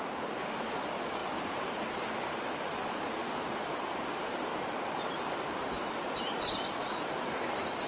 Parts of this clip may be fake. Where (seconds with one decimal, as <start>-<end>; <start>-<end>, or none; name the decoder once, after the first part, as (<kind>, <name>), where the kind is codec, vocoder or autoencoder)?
0.0-4.5 (vocoder, BigVGAN v2); 7.0-7.9